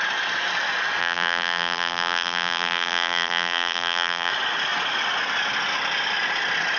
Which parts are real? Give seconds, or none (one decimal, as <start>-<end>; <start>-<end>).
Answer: 0.0-1.0; 4.3-6.8